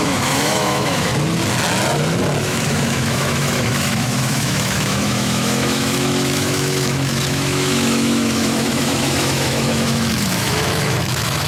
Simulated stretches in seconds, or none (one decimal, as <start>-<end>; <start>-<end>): 0.0-1.1; 2.4-11.5